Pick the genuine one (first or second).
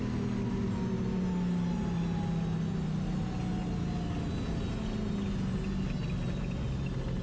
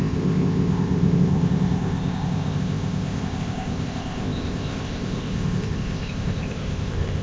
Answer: first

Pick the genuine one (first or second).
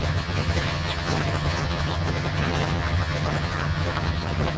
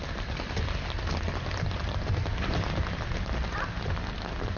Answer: second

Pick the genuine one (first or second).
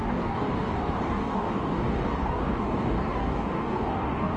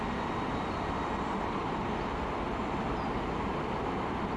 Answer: second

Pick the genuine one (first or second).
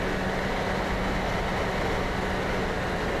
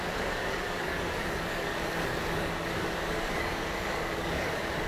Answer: first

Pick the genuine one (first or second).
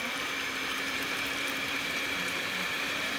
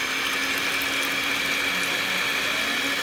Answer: second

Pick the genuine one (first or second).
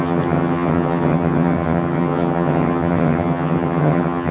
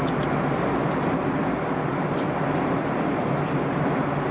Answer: second